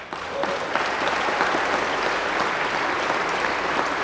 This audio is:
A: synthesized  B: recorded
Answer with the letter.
B